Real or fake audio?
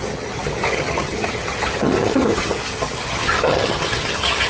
fake